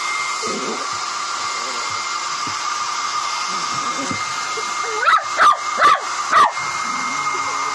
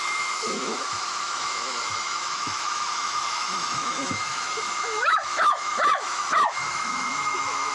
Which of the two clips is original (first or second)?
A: first